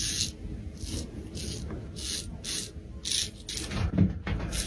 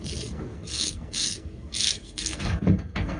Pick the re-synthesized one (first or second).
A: second